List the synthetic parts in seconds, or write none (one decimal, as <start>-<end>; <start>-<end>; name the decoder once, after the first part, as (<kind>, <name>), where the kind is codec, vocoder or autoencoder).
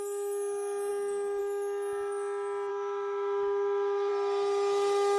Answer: 2.7-4.1 (autoencoder, DAC-VAE)